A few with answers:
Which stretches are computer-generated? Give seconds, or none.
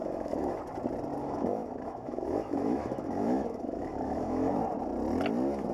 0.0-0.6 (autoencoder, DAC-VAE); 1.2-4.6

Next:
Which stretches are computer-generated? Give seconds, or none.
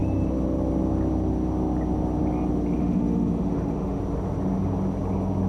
2.8-4.0 (autoencoder, DAC-VAE)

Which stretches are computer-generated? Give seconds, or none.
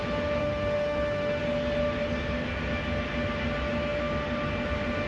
0.4-1.4 (autoencoder, DAC-VAE)